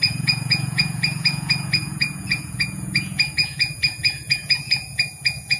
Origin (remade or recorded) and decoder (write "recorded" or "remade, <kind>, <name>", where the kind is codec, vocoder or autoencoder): remade, vocoder, Vocos